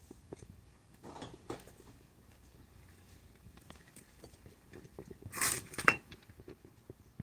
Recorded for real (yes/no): no